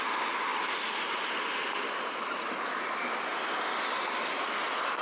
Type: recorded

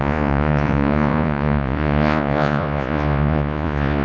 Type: remade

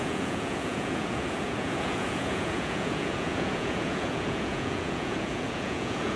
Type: remade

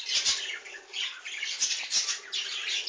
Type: recorded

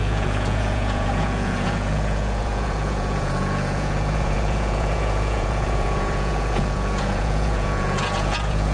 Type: remade